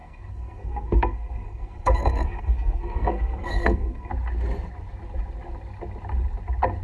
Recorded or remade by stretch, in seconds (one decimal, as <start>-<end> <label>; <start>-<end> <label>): 0.0-4.1 remade; 4.1-6.8 recorded